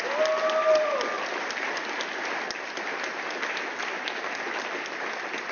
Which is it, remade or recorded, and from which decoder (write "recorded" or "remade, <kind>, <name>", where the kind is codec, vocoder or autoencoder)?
recorded